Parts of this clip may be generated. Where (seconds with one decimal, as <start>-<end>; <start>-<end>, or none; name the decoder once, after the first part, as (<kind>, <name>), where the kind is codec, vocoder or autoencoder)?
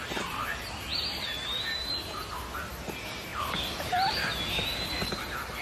0.9-1.9 (vocoder, BigVGAN v2); 3.3-4.4